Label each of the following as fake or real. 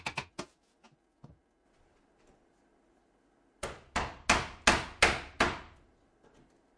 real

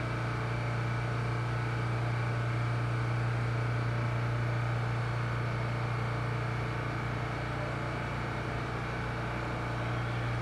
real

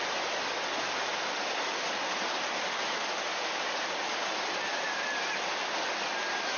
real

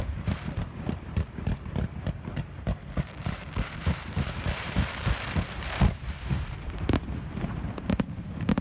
fake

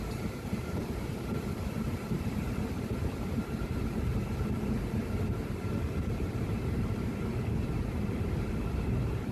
fake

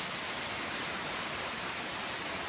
fake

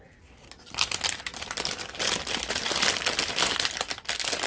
real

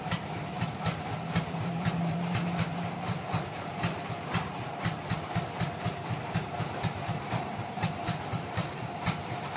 fake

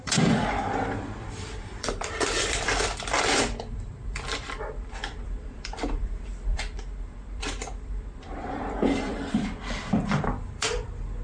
fake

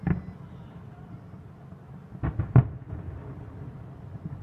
real